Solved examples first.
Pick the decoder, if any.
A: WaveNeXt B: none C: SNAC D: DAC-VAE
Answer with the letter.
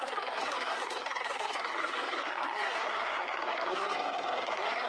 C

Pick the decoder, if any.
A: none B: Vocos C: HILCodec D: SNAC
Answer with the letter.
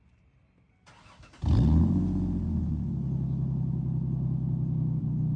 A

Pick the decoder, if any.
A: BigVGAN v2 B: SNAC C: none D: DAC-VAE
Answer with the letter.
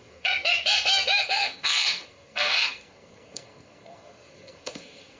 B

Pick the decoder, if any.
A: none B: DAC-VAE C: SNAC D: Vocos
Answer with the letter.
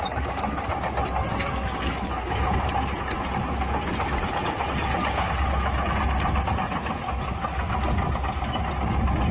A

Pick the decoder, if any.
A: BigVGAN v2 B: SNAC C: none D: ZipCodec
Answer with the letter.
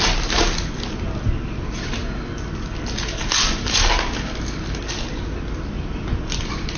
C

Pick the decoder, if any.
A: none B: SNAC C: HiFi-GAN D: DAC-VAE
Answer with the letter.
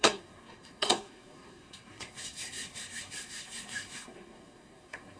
B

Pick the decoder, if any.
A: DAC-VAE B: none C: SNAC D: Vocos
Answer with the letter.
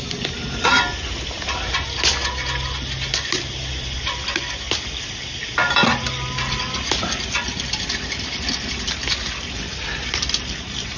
B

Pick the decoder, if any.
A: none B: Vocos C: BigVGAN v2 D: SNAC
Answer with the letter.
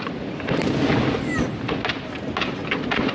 A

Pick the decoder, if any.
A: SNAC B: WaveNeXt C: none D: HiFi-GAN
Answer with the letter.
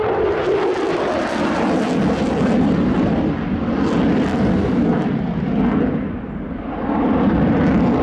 C